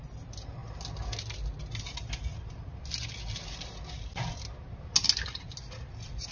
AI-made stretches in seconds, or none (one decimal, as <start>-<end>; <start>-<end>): none